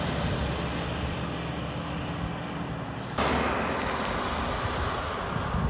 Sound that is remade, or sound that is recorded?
recorded